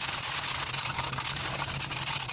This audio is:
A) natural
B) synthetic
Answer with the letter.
A